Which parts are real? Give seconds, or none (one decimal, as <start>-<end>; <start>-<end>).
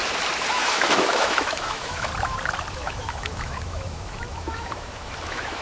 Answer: 0.0-0.5; 2.1-2.7